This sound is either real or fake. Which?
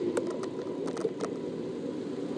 real